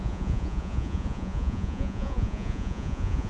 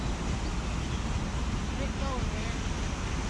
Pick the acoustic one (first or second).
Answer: second